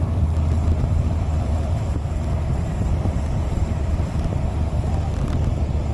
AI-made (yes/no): yes